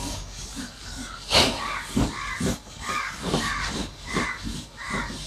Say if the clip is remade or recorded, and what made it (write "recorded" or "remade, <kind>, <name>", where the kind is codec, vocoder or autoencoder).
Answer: remade, codec, DAC